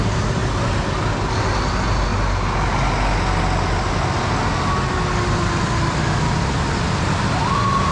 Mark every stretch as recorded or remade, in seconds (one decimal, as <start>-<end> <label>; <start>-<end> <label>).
0.0-7.9 recorded